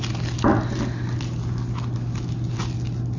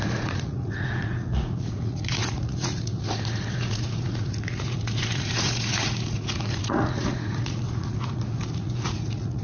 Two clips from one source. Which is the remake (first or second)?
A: second